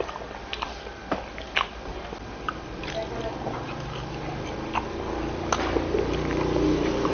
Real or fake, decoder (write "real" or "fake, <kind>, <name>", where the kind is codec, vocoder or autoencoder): real